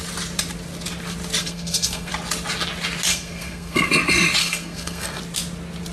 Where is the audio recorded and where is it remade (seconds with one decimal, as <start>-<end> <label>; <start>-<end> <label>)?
0.0-1.4 recorded; 1.4-2.1 remade; 2.1-3.1 recorded; 3.1-3.9 remade; 3.9-4.4 recorded; 4.4-5.2 remade; 5.2-5.9 recorded